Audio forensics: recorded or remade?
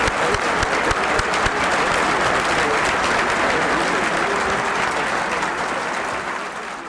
recorded